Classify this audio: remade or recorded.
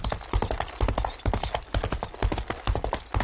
recorded